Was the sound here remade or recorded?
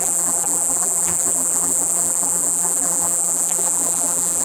remade